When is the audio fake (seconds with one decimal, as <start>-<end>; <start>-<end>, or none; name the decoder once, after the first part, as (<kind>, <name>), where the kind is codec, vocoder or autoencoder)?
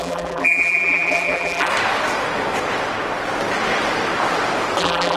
0.0-1.7 (vocoder, BigVGAN v2); 4.8-5.2